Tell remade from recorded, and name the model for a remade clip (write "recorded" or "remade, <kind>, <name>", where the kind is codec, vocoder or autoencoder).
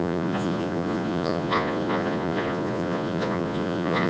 remade, vocoder, Vocos